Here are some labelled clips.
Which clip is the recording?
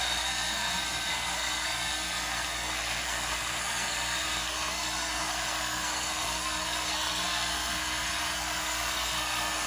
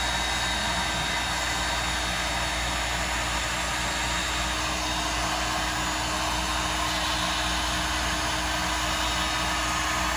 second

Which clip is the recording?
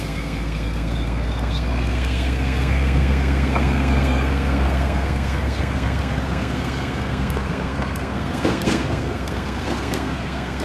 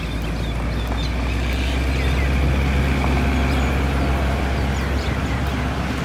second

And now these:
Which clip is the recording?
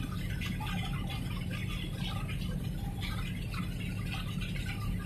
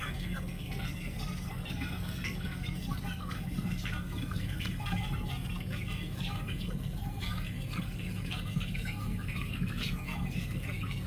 first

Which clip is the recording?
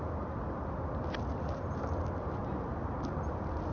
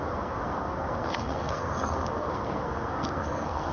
first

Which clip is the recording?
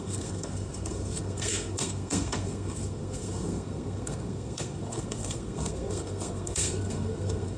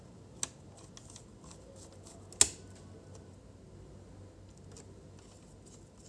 second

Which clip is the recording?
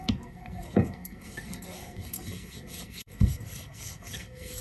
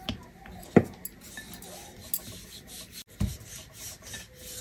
second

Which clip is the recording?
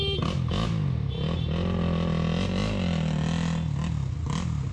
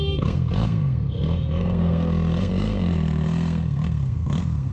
first